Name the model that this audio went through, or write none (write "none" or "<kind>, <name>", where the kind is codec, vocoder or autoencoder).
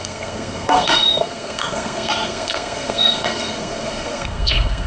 codec, SNAC